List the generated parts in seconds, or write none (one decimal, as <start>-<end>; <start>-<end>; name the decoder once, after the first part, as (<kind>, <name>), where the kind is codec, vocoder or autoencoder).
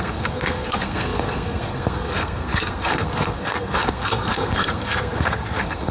0.0-5.9 (codec, SNAC)